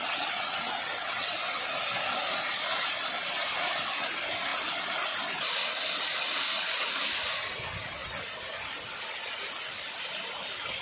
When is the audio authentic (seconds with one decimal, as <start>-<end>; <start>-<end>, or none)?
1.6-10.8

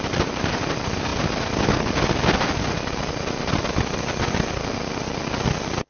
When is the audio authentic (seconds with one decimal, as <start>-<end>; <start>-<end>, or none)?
0.0-5.9

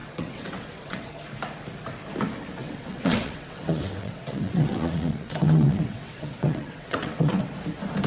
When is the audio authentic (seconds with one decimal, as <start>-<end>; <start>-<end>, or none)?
1.1-2.6; 7.4-8.1

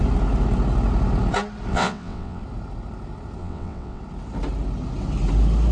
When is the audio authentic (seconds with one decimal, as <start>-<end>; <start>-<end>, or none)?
0.0-1.7; 2.4-3.4; 4.0-5.7

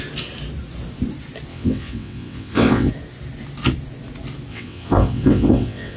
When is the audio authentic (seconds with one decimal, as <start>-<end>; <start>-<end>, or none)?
0.0-1.5; 2.9-4.5

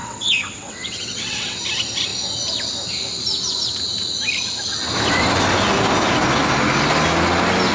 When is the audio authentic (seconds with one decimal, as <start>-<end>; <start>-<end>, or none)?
1.6-7.7